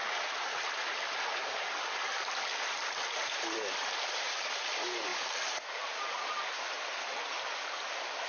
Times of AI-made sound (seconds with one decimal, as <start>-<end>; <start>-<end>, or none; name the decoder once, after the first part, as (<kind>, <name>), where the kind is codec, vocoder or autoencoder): none